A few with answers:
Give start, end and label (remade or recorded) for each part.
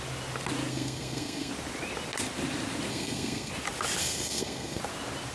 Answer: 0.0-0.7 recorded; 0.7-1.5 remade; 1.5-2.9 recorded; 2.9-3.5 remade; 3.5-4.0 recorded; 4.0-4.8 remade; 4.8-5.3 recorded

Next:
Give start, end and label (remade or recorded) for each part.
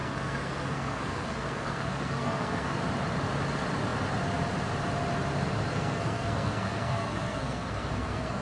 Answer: 0.0-2.8 remade; 2.8-5.7 recorded; 5.7-8.4 remade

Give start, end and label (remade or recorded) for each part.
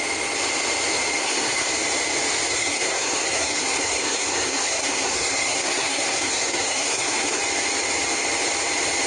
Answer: 0.0-1.2 recorded; 1.2-1.7 remade; 1.7-2.5 recorded; 2.5-7.4 remade; 7.4-9.1 recorded